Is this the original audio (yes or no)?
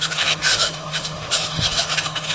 no